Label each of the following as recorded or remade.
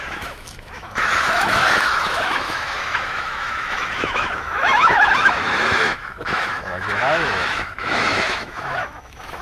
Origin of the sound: remade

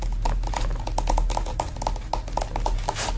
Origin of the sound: recorded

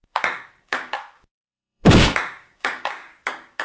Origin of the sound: remade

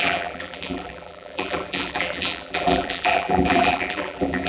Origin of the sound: remade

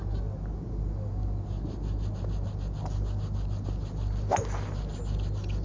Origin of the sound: recorded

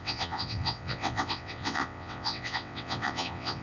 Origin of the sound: remade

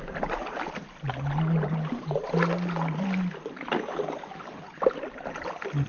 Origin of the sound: recorded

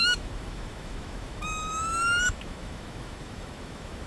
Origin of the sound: remade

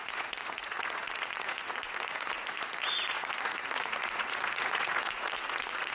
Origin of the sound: remade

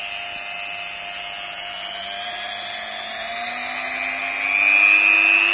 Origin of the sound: recorded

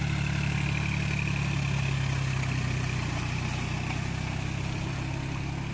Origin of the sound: recorded